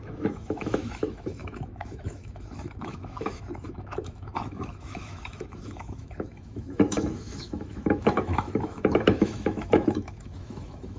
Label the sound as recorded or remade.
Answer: remade